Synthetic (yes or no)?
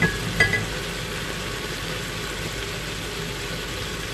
yes